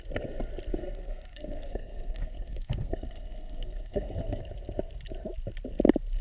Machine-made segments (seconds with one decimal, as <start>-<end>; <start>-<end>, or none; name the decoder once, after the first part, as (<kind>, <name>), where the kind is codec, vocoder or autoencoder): 0.7-4.4 (codec, SNAC)